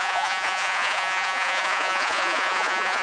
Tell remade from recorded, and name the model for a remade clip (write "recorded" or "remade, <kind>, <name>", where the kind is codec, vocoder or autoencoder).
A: remade, vocoder, Vocos